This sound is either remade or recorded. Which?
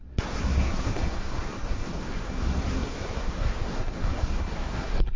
remade